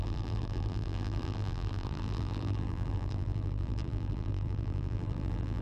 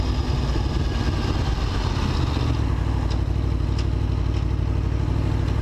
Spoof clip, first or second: first